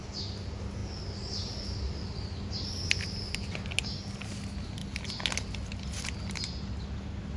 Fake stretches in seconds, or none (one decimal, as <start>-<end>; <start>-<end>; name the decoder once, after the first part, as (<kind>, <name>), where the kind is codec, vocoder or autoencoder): none